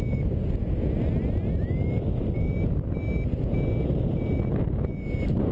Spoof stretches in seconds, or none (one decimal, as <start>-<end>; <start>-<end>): none